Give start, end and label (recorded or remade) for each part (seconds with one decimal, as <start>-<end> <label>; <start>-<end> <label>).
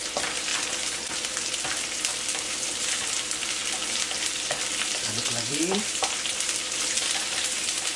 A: 0.0-0.5 remade; 0.5-2.4 recorded; 2.4-3.6 remade; 3.6-4.9 recorded; 4.9-8.0 remade